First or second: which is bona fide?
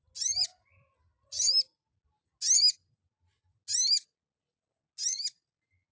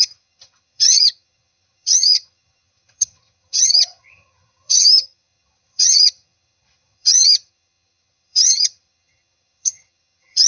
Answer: first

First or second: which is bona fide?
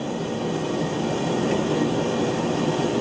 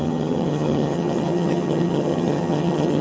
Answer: first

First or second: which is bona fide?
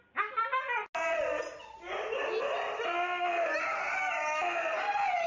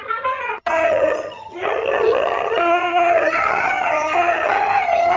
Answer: first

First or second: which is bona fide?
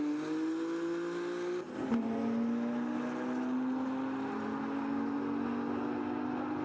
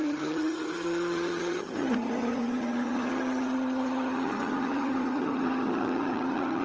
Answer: first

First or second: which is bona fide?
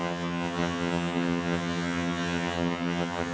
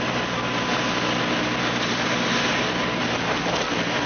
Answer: second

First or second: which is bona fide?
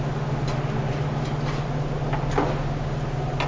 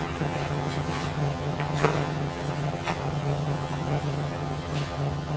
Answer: first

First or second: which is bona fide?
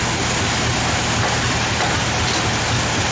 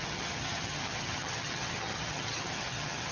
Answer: first